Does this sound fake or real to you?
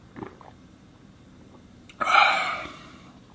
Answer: fake